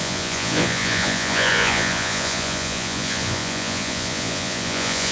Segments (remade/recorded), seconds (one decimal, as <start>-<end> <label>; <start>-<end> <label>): 0.0-5.1 remade